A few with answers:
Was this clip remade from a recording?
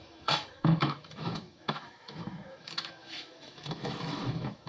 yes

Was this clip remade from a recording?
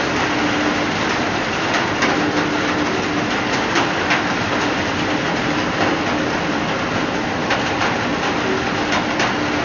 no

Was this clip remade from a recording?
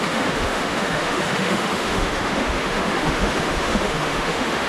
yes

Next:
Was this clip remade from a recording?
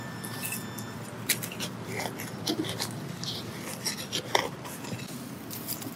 no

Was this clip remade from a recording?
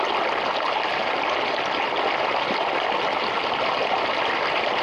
no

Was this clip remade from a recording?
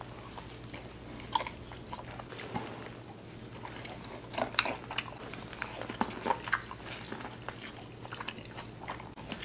no